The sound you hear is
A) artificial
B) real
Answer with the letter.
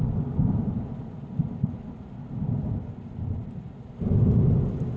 B